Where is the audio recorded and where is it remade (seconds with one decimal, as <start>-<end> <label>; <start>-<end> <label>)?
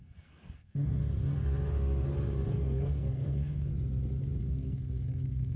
0.0-1.0 remade; 1.0-2.5 recorded; 2.5-3.7 remade; 3.7-4.4 recorded; 4.4-5.6 remade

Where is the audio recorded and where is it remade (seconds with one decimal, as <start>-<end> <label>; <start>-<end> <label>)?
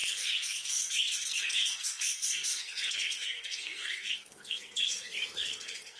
0.0-6.0 remade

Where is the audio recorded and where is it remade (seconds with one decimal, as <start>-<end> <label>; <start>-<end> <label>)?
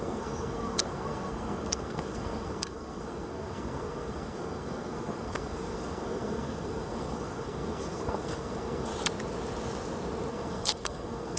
0.0-8.9 remade; 8.9-10.3 recorded; 10.3-11.4 remade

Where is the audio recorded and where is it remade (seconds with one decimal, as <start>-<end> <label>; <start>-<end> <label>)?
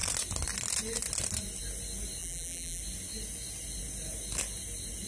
0.0-2.2 recorded; 2.2-2.8 remade; 2.8-5.1 recorded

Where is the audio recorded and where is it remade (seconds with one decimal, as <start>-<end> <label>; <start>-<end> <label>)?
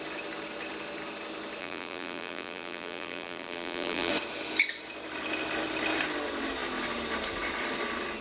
0.0-1.6 recorded; 1.6-4.1 remade; 4.1-8.2 recorded